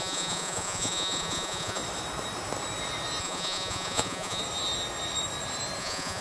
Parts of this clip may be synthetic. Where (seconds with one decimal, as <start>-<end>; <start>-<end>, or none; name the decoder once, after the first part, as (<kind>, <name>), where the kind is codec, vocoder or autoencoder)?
0.0-1.8 (vocoder, Vocos); 3.2-4.4; 5.8-6.2